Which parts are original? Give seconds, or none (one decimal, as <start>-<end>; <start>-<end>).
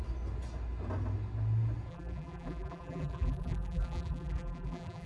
0.0-1.9